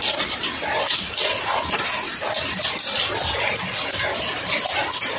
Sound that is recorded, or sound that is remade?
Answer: recorded